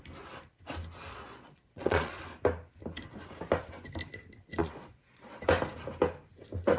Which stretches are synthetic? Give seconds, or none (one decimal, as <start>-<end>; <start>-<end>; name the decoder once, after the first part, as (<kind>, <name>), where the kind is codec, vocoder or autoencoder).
1.1-2.2 (vocoder, Vocos); 4.6-5.4